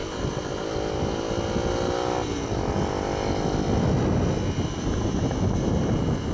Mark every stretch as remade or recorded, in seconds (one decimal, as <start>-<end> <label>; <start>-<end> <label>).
0.0-6.3 recorded